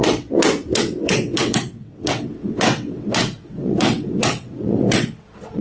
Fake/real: fake